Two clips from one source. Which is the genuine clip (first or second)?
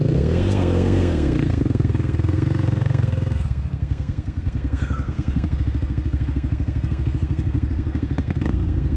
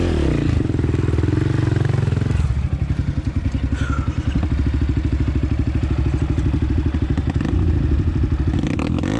second